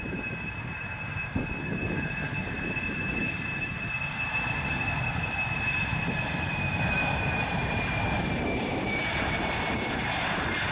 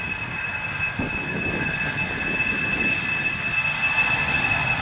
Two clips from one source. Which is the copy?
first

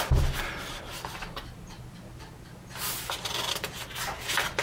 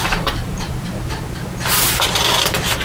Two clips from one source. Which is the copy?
second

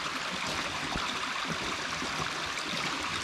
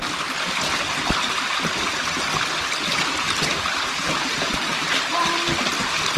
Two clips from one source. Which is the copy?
first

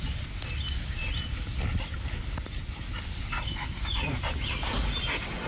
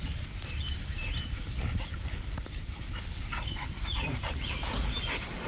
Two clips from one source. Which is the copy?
second